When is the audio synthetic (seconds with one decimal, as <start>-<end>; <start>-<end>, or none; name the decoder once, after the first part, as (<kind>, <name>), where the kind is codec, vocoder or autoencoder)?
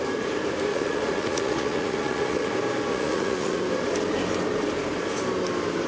0.7-2.5 (vocoder, Vocos); 2.9-3.6